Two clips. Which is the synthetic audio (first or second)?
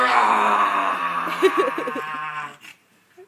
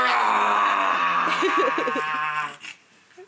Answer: first